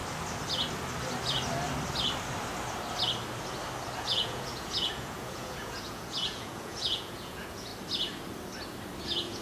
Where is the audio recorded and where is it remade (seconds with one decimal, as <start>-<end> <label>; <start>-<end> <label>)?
0.0-4.0 recorded; 4.0-7.7 remade; 7.7-9.0 recorded; 9.0-9.4 remade